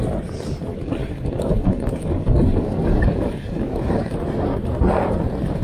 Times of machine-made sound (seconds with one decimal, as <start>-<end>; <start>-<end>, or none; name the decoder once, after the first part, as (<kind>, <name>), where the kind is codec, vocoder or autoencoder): 0.7-4.1 (codec, DAC)